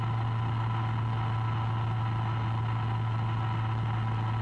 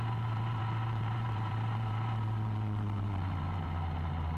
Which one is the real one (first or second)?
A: first